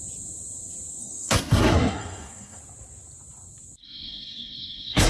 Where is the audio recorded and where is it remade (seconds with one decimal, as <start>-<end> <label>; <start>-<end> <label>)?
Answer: 0.0-1.0 recorded; 1.0-2.6 remade; 2.6-3.8 recorded; 3.8-5.1 remade

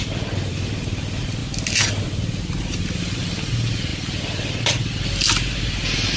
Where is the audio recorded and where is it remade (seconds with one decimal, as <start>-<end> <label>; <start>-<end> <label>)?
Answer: 0.0-6.2 recorded

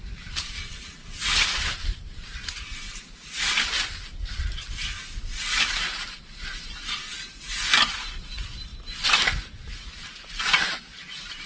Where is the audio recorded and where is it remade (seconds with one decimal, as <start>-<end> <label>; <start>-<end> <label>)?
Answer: 0.0-7.1 remade; 7.1-7.8 recorded; 7.8-11.5 remade

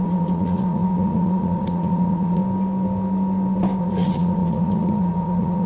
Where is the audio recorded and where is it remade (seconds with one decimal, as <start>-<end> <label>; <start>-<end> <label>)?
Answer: 0.0-2.4 remade; 2.4-3.8 recorded; 3.8-5.7 remade

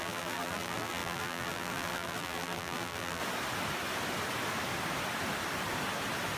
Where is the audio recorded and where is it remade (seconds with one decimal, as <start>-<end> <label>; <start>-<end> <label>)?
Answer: 0.0-3.2 remade; 3.2-6.4 recorded

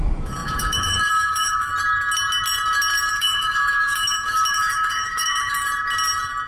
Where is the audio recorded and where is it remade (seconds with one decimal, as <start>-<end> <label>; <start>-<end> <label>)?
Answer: 0.0-1.7 remade; 1.7-3.1 recorded; 3.1-5.6 remade; 5.6-6.5 recorded

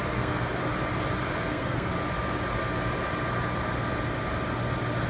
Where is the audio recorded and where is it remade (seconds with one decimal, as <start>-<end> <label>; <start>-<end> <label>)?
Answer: 0.0-0.6 remade; 0.6-1.5 recorded; 1.5-1.9 remade; 1.9-5.1 recorded

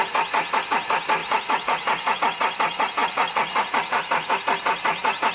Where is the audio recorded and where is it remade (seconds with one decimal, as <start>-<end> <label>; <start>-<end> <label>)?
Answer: 0.0-1.2 recorded; 1.2-2.2 remade; 2.2-3.0 recorded; 3.0-4.3 remade; 4.3-5.3 recorded